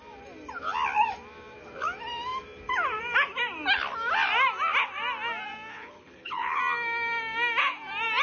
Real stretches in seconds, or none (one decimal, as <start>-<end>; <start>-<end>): 0.0-5.7; 6.6-8.2